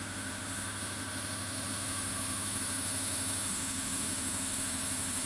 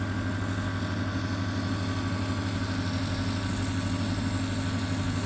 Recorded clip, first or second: second